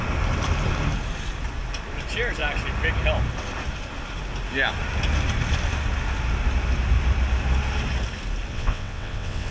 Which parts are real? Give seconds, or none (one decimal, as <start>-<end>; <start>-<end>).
0.0-8.5